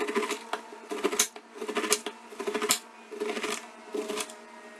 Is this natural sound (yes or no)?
yes